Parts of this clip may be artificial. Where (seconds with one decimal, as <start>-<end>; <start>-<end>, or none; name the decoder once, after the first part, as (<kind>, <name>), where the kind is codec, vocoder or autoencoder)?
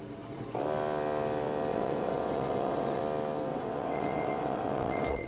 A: 1.7-3.0 (vocoder, WaveNeXt); 3.5-5.3